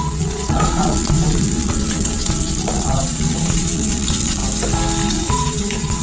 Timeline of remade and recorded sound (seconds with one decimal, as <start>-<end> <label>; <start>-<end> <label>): 0.0-4.4 remade; 4.4-5.1 recorded; 5.1-6.0 remade